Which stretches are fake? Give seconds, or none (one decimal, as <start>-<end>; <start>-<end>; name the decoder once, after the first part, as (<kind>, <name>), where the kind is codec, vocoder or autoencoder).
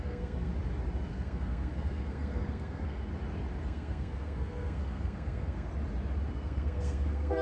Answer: 0.0-0.5 (codec, SNAC); 1.1-3.1; 3.6-5.7; 6.3-7.4